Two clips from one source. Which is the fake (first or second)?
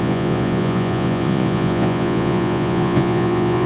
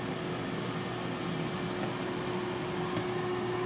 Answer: first